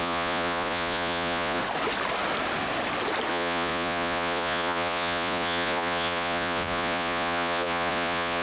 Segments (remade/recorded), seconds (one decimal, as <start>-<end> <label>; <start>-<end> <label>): 0.0-1.6 remade; 1.6-3.3 recorded; 3.3-8.4 remade